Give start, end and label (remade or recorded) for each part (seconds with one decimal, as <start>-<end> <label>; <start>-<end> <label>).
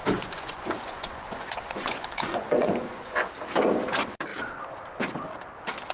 0.0-3.3 remade; 3.3-5.9 recorded